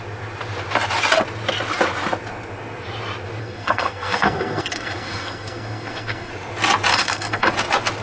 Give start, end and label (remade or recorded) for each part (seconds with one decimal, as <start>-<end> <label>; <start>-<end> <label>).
0.0-3.4 recorded; 3.4-6.3 remade; 6.3-6.9 recorded; 6.9-7.5 remade; 7.5-8.0 recorded